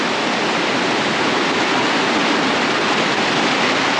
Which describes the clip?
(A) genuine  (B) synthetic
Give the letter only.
A